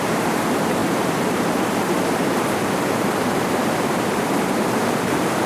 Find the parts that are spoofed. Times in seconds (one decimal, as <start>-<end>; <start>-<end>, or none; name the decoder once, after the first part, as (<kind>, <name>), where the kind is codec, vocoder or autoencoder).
0.0-5.5 (vocoder, BigVGAN v2)